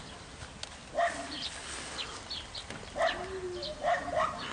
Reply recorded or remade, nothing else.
recorded